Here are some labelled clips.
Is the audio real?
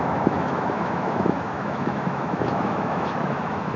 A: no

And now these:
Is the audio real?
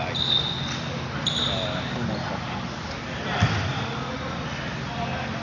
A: yes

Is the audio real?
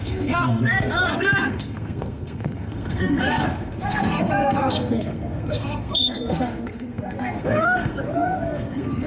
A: no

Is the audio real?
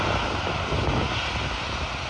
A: yes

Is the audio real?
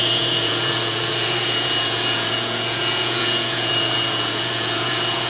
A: no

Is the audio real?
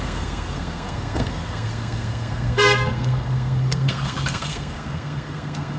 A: no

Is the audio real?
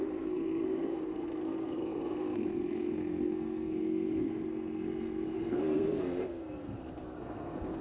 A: no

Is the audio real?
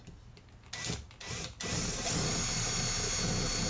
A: yes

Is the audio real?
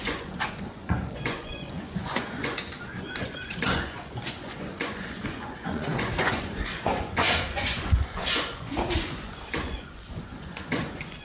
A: no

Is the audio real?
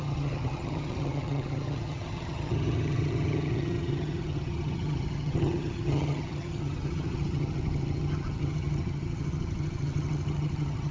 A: no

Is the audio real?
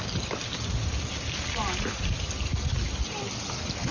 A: yes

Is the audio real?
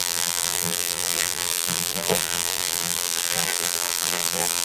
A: no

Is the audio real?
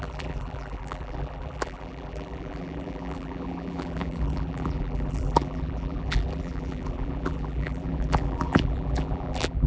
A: no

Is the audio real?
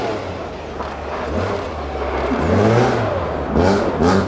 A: yes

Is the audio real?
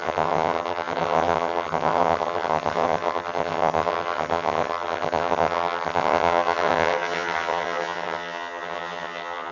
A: no